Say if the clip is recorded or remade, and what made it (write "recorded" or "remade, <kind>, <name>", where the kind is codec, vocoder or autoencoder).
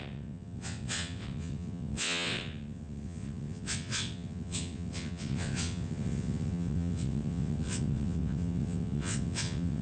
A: remade, vocoder, WaveNeXt